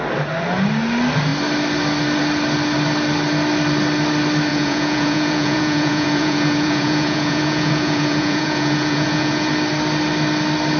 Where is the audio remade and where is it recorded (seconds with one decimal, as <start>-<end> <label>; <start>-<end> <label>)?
0.0-4.5 recorded; 4.5-9.5 remade; 9.5-10.8 recorded